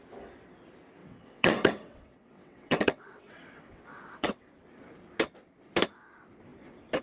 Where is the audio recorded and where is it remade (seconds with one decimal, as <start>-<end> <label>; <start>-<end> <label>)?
0.0-1.0 recorded; 1.0-4.4 remade; 4.4-7.0 recorded